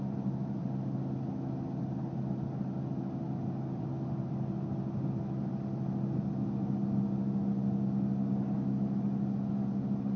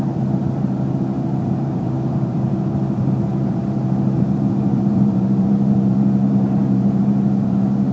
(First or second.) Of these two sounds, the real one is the first